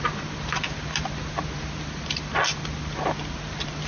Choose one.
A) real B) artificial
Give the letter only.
A